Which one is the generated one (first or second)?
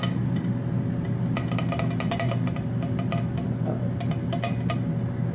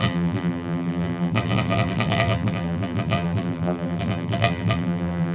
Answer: second